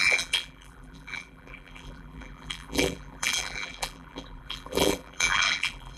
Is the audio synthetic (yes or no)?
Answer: yes